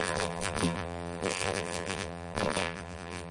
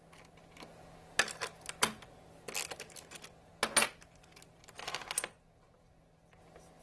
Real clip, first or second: second